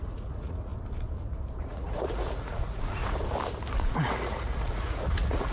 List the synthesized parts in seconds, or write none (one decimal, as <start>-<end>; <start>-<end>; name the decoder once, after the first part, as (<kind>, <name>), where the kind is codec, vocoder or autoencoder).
0.0-0.7 (vocoder, Vocos); 1.6-3.0; 3.7-5.5